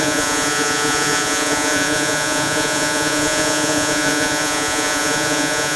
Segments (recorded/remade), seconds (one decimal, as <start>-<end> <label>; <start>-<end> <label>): 0.0-5.8 remade